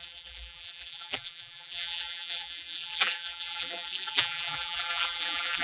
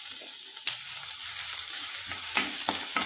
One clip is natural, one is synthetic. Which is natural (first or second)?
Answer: second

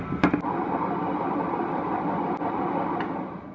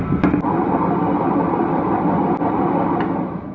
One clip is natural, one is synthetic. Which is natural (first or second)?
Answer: second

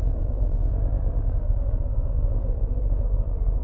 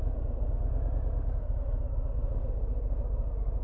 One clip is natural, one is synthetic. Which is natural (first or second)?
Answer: second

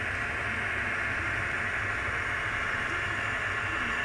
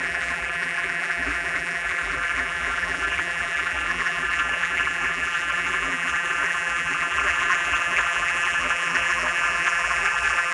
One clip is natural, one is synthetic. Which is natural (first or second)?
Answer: first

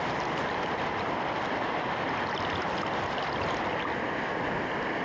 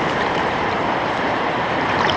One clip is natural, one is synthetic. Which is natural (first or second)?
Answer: first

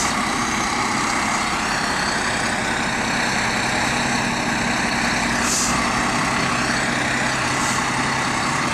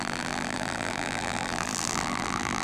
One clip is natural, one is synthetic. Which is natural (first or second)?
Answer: first